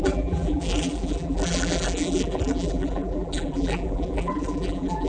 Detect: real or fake fake